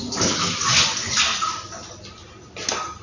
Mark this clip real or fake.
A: real